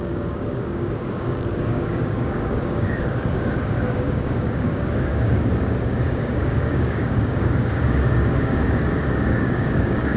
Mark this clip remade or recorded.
remade